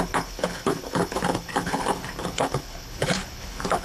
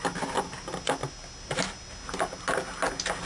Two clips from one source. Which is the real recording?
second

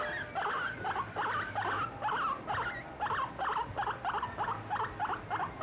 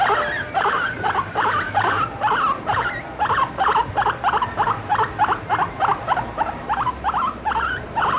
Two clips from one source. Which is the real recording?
first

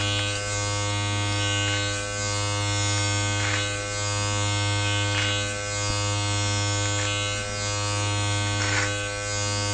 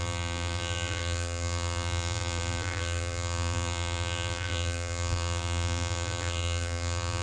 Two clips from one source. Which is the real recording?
first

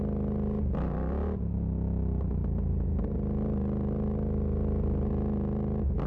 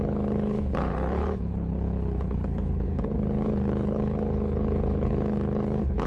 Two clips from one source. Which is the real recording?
first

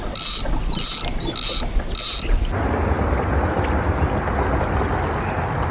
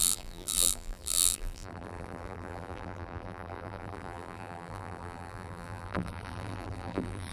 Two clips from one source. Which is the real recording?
first